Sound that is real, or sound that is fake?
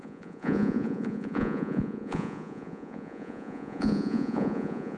fake